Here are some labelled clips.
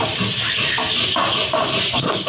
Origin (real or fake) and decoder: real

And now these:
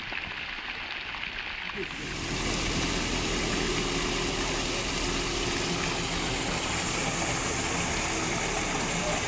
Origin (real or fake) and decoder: real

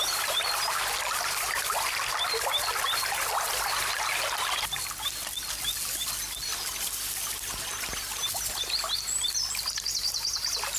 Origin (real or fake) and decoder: real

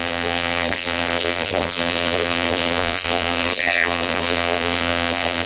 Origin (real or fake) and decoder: fake, vocoder, BigVGAN v2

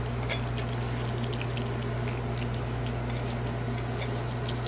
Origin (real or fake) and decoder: real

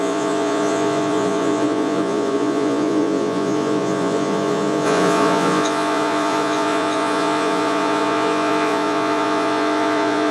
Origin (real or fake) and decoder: fake, vocoder, Vocos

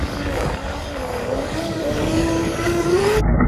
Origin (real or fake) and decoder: fake, codec, DAC